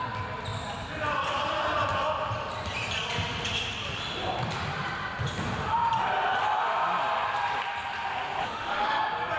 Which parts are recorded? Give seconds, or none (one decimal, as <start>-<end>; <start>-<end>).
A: 0.0-8.4; 9.0-9.4